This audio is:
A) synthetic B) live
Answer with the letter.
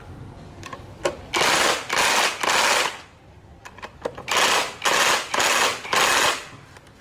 B